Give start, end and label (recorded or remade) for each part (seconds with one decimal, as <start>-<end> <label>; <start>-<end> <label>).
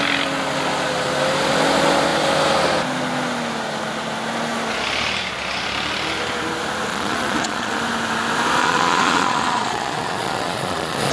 0.0-6.9 recorded; 6.9-7.8 remade; 7.8-8.6 recorded; 8.6-11.1 remade